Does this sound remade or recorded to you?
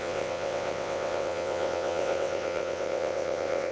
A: remade